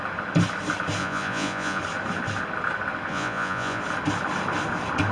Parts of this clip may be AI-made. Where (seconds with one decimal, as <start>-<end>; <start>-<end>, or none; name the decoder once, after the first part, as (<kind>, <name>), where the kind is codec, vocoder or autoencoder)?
1.0-1.8 (vocoder, Vocos); 3.1-3.8